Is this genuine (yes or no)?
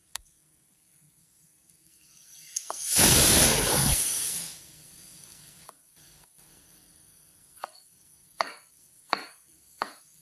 no